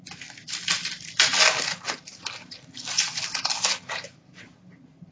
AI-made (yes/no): no